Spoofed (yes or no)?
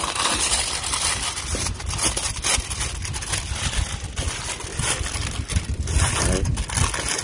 no